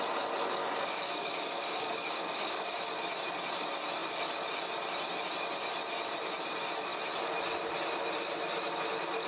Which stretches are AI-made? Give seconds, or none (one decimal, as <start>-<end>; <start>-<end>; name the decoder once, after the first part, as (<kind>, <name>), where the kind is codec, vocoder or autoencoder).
0.6-2.8 (codec, DAC)